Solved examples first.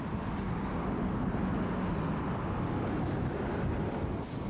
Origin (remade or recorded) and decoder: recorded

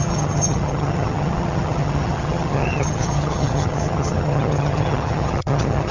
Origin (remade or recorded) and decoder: remade, vocoder, HiFi-GAN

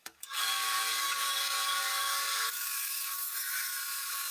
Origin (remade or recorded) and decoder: remade, codec, DAC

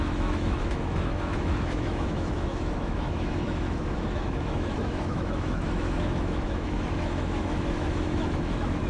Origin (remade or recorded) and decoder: remade, autoencoder, DAC-VAE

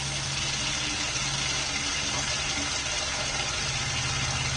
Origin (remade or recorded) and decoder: recorded